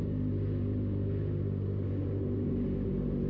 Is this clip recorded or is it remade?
recorded